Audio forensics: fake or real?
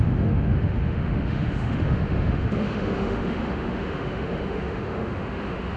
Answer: fake